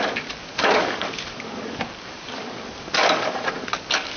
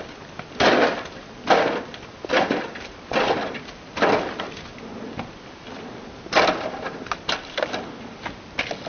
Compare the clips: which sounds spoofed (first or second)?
first